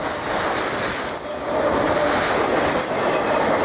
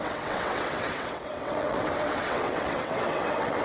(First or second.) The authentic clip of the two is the first